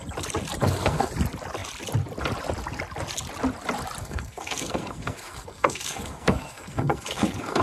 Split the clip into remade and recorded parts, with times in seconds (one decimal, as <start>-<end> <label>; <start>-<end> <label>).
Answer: 0.0-0.6 recorded; 0.6-1.1 remade; 1.1-4.0 recorded; 4.0-7.6 remade